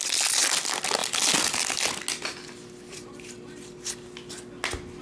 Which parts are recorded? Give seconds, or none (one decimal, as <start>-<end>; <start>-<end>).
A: 0.0-5.0